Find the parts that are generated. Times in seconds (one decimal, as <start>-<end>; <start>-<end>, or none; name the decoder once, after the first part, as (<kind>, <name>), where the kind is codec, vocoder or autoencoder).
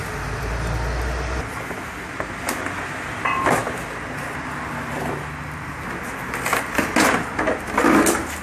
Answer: none